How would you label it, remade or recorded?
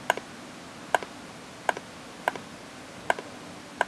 recorded